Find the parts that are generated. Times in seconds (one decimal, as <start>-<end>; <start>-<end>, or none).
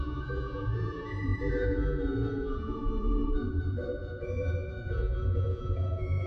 0.0-6.3